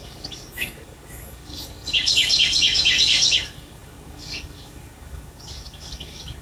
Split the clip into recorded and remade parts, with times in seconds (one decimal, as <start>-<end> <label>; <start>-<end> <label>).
0.0-6.4 remade